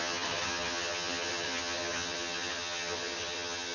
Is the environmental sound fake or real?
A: fake